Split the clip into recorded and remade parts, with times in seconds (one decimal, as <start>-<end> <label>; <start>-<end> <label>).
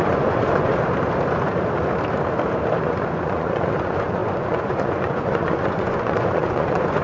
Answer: 0.0-0.7 remade; 0.7-2.8 recorded; 2.8-7.0 remade